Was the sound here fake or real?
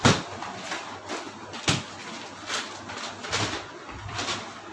real